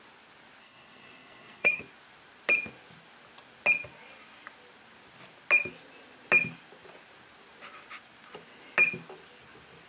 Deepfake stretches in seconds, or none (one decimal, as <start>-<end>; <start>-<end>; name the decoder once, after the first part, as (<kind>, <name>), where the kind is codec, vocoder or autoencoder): 0.6-1.8 (codec, SNAC)